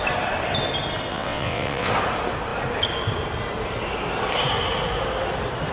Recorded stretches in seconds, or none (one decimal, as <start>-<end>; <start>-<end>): 0.0-1.1; 1.9-5.7